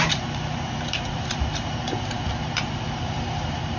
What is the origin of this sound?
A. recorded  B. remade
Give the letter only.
B